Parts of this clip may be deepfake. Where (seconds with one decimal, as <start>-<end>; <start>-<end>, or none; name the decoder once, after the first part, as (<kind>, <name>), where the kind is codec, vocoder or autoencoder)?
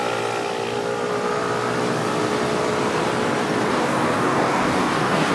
3.7-5.3 (codec, DAC)